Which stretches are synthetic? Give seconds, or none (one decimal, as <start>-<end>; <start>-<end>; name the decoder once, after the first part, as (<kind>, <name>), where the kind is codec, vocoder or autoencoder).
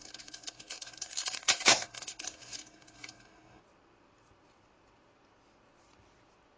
0.0-3.6 (codec, SNAC)